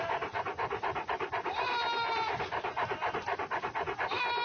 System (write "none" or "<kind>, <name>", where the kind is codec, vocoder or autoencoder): none